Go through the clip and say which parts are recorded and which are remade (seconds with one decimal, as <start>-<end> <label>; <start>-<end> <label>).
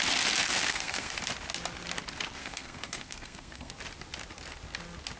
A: 0.0-0.4 recorded; 0.4-1.1 remade; 1.1-2.4 recorded; 2.4-3.7 remade; 3.7-5.2 recorded